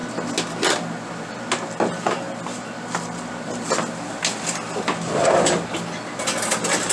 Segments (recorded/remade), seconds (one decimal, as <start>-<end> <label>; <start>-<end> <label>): 0.0-6.9 recorded